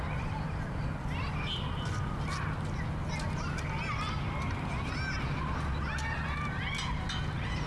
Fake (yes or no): no